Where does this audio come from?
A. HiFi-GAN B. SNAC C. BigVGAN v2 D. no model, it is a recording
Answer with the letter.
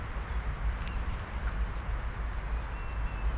D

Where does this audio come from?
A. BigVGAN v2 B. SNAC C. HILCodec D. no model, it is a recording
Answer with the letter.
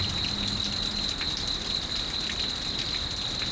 D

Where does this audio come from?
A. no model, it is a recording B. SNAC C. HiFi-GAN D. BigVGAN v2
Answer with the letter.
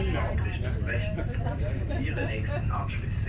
D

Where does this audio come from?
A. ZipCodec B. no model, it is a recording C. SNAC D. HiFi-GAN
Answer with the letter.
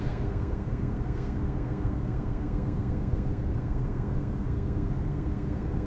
C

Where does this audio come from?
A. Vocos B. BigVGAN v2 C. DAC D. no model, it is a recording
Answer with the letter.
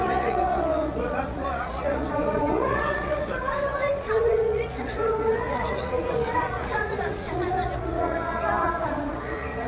A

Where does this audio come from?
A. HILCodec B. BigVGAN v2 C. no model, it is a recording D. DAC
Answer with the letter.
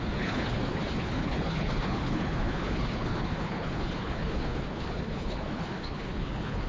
A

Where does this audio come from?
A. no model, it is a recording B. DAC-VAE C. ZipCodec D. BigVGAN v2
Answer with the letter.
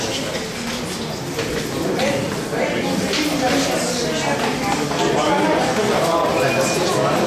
A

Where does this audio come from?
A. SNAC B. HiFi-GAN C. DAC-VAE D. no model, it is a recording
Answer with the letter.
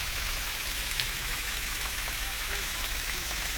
C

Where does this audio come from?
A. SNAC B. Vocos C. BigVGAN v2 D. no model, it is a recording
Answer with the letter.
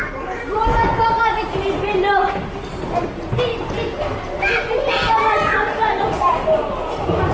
D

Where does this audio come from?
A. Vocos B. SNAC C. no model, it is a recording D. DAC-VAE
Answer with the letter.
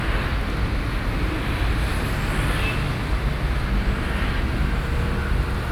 C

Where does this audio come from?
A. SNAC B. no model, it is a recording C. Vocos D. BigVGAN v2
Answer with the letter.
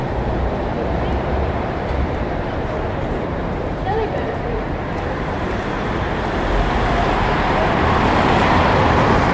D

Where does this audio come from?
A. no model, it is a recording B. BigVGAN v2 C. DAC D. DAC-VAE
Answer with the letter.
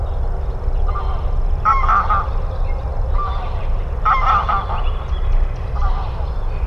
A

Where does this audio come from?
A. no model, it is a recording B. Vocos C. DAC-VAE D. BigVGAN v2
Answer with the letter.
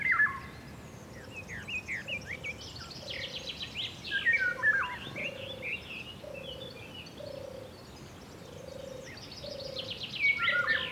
A